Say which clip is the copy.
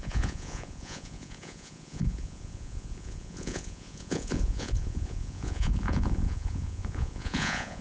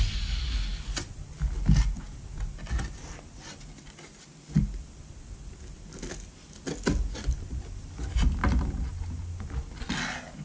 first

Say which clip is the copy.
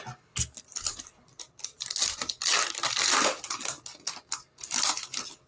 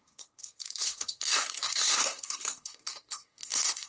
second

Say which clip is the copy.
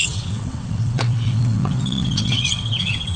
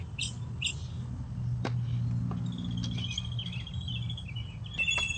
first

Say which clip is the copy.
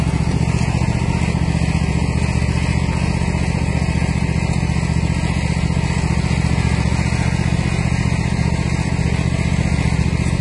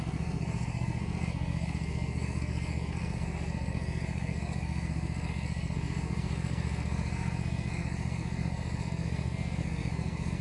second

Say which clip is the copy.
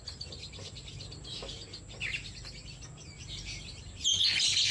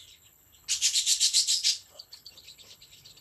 second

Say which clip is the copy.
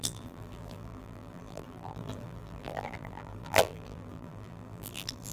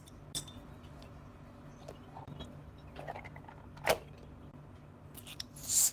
first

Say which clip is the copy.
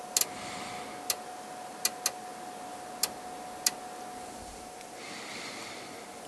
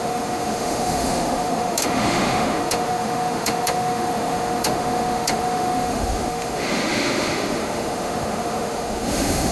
second